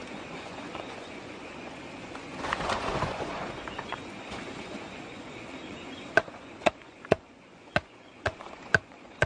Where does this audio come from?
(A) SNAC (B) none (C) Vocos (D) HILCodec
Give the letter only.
C